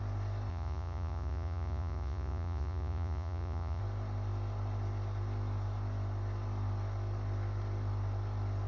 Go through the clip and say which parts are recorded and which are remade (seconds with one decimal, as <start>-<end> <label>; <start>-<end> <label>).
0.0-0.5 recorded; 0.5-3.8 remade; 3.8-8.7 recorded